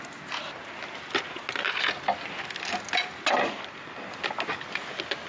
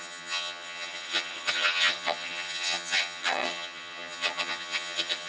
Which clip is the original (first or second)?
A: first